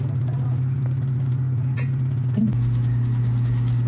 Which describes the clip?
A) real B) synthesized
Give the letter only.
A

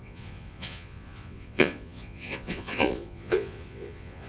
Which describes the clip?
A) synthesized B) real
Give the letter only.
A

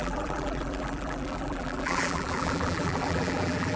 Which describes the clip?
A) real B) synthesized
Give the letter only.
B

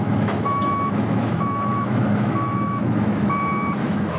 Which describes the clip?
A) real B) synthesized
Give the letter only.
B